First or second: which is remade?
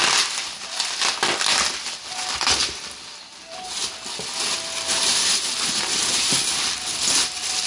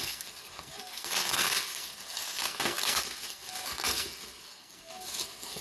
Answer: second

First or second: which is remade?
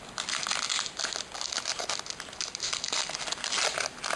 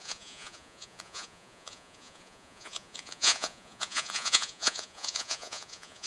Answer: second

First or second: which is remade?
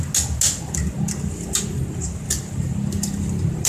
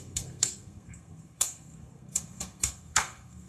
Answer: second